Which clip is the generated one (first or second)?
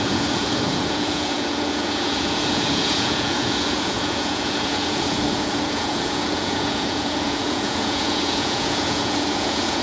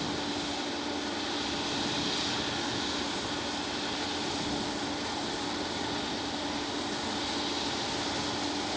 first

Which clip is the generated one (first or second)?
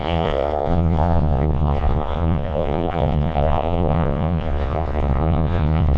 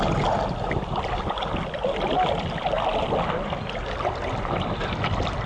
first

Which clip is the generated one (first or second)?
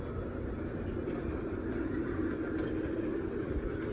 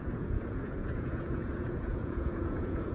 second